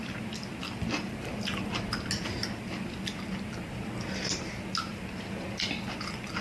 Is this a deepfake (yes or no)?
no